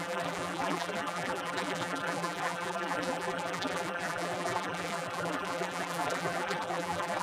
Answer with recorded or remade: remade